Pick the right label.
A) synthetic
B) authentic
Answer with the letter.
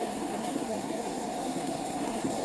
A